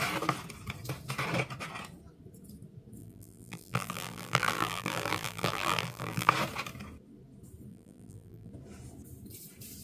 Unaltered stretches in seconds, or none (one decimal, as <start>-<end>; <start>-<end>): 0.0-3.0; 6.3-7.7; 8.5-9.8